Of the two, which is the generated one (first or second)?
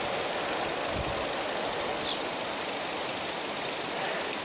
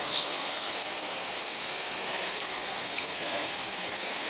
second